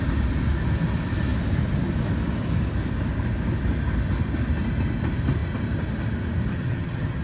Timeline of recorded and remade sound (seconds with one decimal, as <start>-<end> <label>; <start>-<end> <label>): 0.0-6.5 recorded; 6.5-7.2 remade